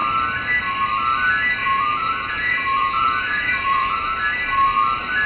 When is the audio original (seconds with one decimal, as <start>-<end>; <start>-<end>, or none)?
0.0-1.6; 4.1-5.3